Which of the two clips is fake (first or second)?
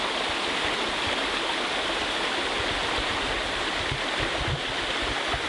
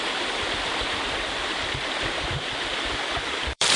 second